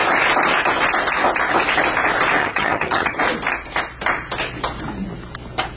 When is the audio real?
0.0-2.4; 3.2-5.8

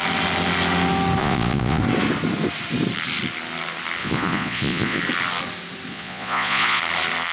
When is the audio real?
0.0-1.2; 1.8-4.0; 5.0-5.9; 6.8-7.3

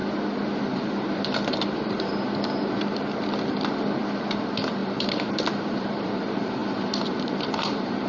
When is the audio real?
0.0-0.6; 2.1-4.3

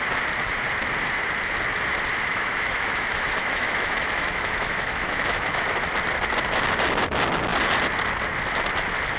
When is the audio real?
0.0-2.1; 5.7-9.2